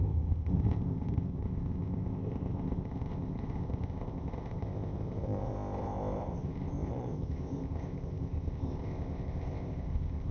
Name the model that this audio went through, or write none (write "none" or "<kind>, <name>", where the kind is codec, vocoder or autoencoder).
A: codec, ZipCodec